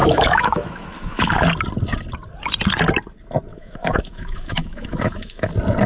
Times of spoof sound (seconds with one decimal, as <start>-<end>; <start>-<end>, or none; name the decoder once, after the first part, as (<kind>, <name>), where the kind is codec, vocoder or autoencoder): 0.0-1.3 (autoencoder, DAC-VAE); 3.5-5.5